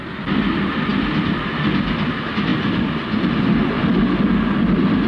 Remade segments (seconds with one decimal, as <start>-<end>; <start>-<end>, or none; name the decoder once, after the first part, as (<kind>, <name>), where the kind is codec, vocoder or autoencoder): none